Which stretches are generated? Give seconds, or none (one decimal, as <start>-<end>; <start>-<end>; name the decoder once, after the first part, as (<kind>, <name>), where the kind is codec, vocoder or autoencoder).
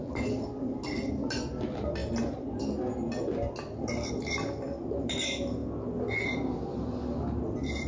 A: none